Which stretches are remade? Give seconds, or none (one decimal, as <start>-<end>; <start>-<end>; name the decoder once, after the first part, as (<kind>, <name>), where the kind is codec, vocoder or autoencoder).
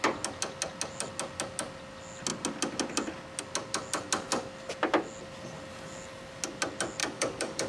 7.0-7.7 (codec, DAC)